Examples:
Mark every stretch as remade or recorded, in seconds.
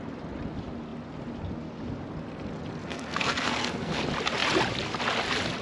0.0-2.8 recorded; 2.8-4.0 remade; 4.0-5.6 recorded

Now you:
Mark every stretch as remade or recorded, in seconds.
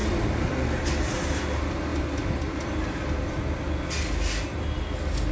0.0-0.8 remade; 0.8-1.9 recorded; 1.9-2.6 remade; 2.6-5.3 recorded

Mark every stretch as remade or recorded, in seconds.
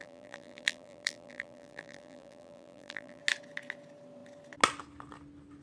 0.0-3.2 remade; 3.2-5.6 recorded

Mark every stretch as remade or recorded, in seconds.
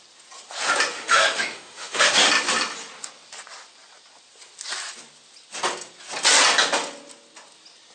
0.0-0.9 recorded; 0.9-2.1 remade; 2.1-7.9 recorded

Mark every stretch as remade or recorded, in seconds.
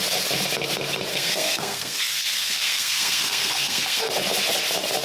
0.0-1.1 recorded; 1.1-4.1 remade; 4.1-5.0 recorded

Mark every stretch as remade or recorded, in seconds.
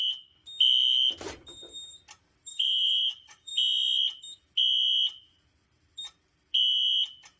0.0-2.5 recorded; 2.5-3.5 remade; 3.5-7.4 recorded